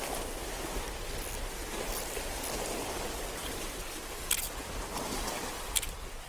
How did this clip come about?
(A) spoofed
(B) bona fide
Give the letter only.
B